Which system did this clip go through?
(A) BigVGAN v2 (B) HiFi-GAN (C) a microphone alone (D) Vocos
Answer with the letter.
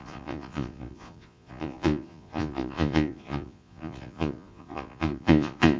D